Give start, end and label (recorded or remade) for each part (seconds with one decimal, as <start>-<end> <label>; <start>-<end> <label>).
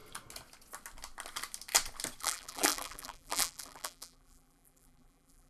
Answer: 0.0-2.2 recorded; 2.2-5.5 remade